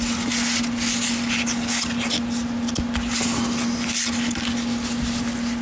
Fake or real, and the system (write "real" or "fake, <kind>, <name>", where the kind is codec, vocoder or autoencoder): real